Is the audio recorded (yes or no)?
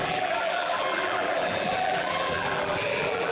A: no